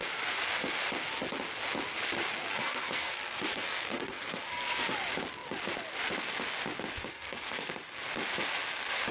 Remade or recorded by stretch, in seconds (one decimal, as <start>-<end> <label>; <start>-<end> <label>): 0.0-2.5 recorded; 2.5-4.8 remade; 4.8-7.1 recorded; 7.1-7.7 remade; 7.7-9.1 recorded